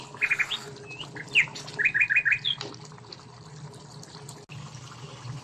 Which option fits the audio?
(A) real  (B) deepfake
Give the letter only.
A